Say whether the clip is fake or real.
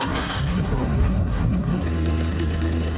fake